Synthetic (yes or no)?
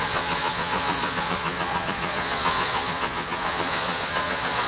yes